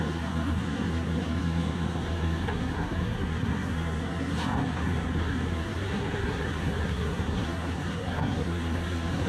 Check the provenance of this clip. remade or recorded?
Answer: remade